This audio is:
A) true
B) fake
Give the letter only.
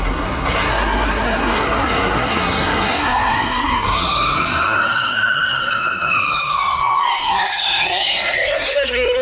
B